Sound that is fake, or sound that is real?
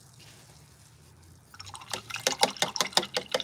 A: real